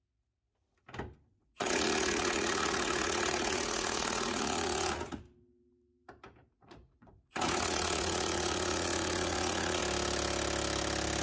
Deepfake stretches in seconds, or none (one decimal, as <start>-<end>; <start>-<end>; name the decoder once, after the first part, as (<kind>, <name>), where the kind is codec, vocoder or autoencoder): 1.3-5.2 (vocoder, Vocos); 6.4-9.8